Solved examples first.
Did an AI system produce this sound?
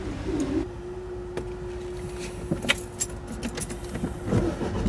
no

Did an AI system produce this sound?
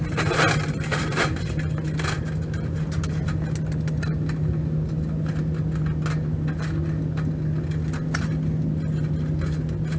no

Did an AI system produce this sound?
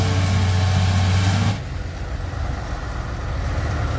no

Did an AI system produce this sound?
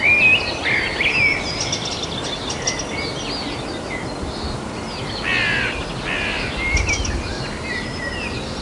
no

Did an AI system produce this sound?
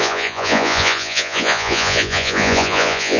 yes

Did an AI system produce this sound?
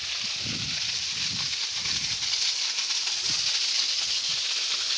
no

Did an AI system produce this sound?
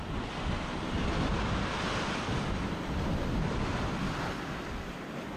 no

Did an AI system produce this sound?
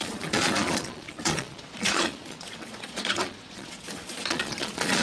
yes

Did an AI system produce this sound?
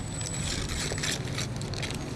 no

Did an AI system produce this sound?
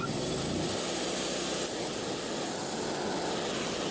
no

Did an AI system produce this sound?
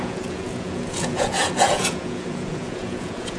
yes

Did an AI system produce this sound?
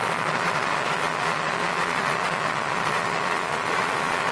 yes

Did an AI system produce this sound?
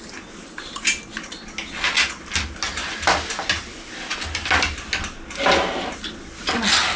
no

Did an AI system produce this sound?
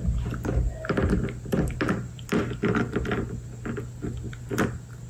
no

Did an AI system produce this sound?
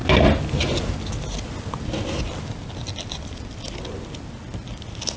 no